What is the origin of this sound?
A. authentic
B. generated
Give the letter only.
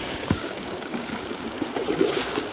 B